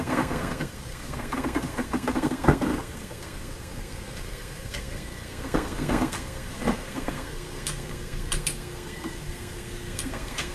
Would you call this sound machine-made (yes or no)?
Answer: yes